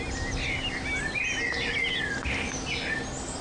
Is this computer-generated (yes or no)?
no